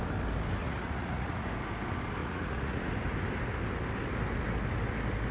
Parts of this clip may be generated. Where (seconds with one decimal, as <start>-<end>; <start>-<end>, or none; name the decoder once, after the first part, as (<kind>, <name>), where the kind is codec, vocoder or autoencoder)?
0.6-1.5 (vocoder, Vocos); 2.2-2.9